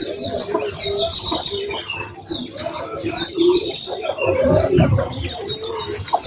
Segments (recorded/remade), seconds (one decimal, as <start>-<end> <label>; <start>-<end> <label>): 0.0-6.3 recorded